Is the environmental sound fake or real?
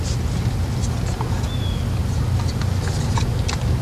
real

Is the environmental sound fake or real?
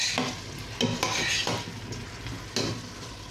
real